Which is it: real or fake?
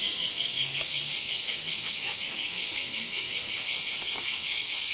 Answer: fake